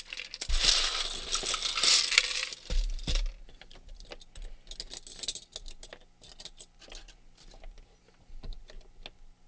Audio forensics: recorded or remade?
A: recorded